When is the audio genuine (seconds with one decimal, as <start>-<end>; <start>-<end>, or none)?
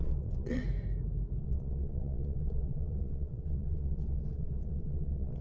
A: 0.6-1.4